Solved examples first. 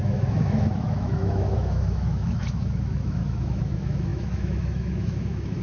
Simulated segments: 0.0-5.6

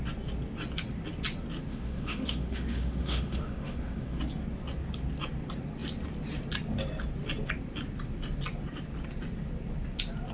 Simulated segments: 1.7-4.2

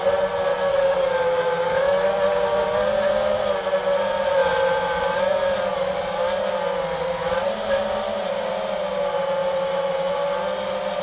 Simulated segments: 0.7-2.1

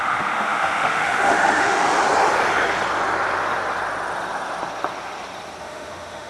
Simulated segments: 0.0-2.0; 5.6-6.3

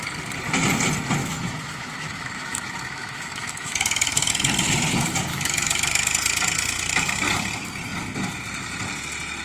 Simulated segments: 1.2-4.3; 5.3-6.1

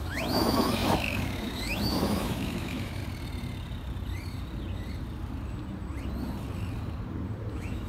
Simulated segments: 0.0-3.0; 7.5-7.9

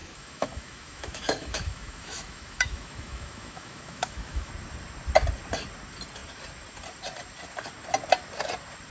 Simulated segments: 0.0-4.5

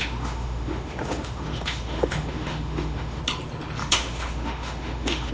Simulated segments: 0.0-3.2; 3.8-5.3